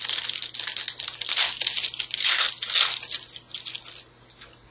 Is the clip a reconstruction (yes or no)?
no